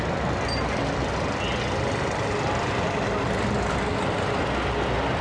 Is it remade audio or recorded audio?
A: recorded